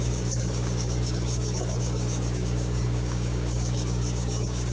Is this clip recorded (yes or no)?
no